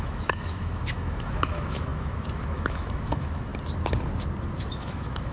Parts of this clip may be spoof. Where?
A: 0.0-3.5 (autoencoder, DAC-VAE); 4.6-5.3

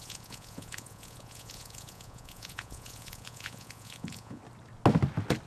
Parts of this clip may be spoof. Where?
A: 0.0-4.4 (vocoder, Vocos)

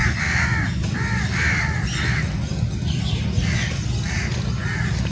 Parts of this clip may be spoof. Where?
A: none

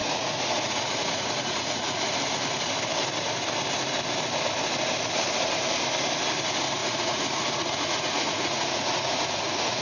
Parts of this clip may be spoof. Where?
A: 0.0-2.1 (vocoder, Vocos); 6.8-9.8